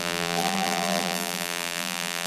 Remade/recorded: remade